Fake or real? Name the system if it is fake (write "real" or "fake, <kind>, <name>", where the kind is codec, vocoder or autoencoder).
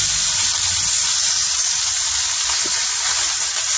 real